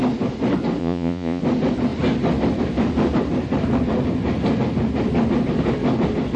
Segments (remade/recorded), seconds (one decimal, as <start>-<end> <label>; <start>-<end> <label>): 0.0-0.8 recorded; 0.8-1.4 remade; 1.4-6.4 recorded